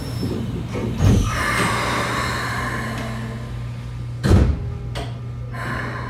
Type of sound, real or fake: real